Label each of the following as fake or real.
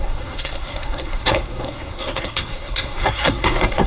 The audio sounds fake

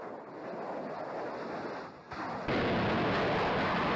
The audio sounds real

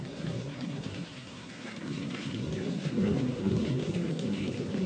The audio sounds fake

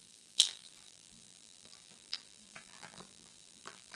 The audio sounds fake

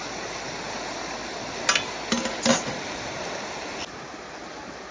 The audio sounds real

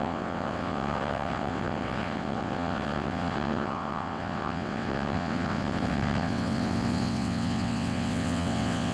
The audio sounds fake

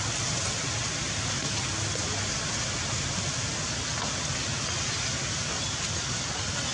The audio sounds real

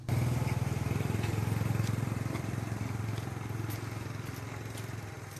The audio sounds real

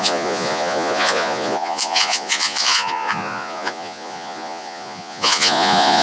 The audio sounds fake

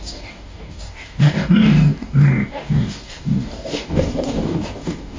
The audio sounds fake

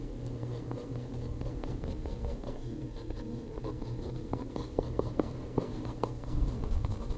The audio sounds fake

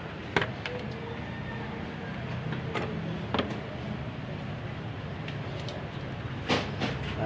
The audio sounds real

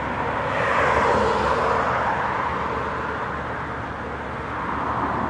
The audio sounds real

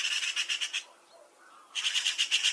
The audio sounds real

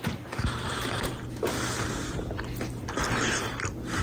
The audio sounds real